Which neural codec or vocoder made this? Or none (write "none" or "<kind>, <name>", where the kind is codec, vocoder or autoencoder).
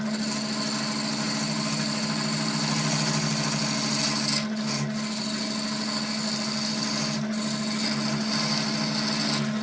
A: none